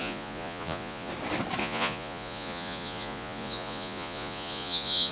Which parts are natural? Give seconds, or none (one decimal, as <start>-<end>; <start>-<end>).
1.1-1.6